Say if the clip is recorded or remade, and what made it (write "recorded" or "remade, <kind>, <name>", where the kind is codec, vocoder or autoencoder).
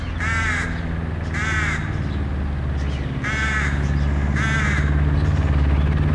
recorded